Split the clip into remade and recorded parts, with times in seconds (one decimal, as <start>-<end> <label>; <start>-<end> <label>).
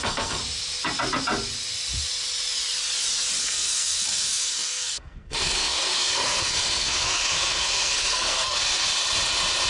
0.0-0.4 remade; 0.4-3.4 recorded; 3.4-8.6 remade; 8.6-9.7 recorded